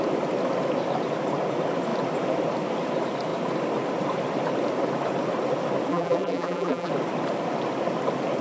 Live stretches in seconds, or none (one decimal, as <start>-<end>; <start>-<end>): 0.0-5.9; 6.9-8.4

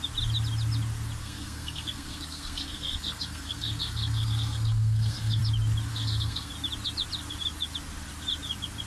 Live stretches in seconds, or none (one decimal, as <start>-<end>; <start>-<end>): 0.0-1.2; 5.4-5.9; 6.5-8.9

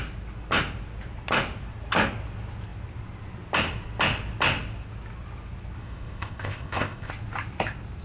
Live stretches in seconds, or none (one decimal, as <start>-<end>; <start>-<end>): 0.0-5.8; 7.1-8.0

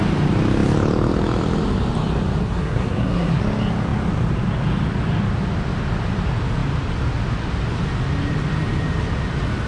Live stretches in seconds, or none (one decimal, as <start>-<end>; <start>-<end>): 0.0-2.4; 3.4-9.7

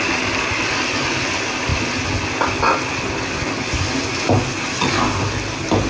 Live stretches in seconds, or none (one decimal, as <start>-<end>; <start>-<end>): 0.0-5.9

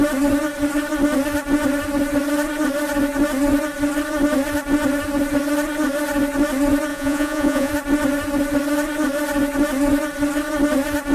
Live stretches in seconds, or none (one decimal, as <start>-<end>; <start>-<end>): 0.0-6.9; 7.7-11.1

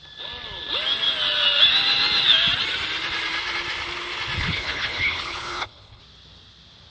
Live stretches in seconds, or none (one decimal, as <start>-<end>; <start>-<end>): 0.0-4.4; 6.0-6.9

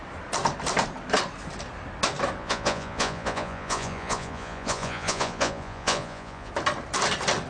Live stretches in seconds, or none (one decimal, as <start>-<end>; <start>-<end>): 0.0-2.4; 6.5-7.5